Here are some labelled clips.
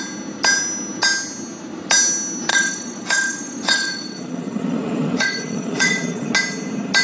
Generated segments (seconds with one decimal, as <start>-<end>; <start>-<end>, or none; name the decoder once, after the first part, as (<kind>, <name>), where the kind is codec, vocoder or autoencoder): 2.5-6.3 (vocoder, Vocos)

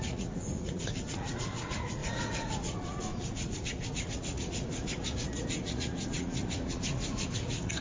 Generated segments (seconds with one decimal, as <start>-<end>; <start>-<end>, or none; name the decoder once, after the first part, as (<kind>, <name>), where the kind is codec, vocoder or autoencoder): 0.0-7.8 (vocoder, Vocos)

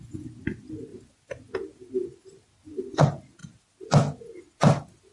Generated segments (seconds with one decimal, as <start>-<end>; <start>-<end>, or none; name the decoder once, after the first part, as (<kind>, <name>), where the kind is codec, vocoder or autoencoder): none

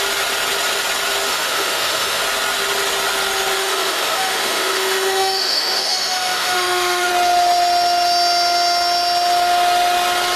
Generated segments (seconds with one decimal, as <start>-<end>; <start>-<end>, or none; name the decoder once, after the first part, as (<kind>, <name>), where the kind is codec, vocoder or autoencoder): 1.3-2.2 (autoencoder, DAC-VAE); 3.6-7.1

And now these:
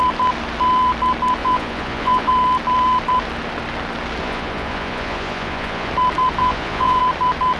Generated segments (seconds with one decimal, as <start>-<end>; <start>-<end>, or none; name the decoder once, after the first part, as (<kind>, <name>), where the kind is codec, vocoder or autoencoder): 1.4-2.3 (vocoder, Vocos); 4.2-5.9; 6.4-7.0

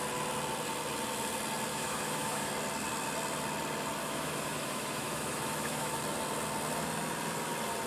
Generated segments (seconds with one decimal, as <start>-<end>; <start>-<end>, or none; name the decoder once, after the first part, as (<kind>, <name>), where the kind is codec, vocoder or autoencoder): 1.7-2.5 (autoencoder, DAC-VAE); 4.0-6.0

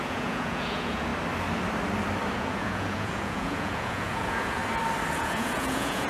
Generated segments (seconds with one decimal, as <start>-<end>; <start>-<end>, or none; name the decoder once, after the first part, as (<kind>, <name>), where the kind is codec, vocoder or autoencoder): 0.0-1.1 (vocoder, Vocos); 2.4-4.6; 5.1-6.1

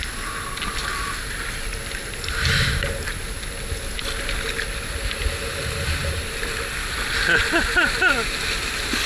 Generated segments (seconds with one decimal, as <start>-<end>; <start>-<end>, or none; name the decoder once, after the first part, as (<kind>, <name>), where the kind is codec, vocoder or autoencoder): none